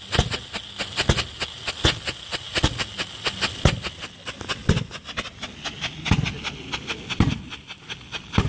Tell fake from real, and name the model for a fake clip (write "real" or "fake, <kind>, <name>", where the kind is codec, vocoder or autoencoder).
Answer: real